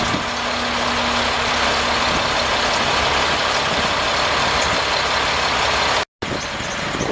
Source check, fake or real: real